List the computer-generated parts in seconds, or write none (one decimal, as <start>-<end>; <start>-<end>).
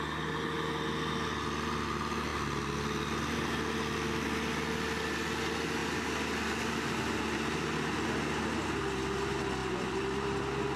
9.6-10.4